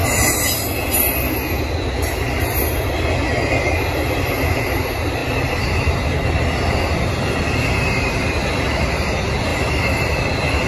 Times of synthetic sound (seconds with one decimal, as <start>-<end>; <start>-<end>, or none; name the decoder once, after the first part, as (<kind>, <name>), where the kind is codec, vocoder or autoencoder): 9.5-10.2 (vocoder, BigVGAN v2)